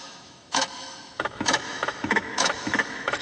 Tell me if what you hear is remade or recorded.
remade